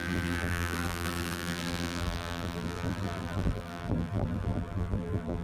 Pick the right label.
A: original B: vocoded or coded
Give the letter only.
B